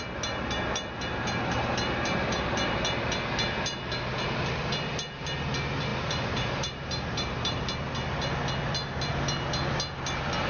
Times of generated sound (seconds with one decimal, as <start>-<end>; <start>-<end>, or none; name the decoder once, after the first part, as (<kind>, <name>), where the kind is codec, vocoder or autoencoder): 5.9-7.6 (vocoder, BigVGAN v2)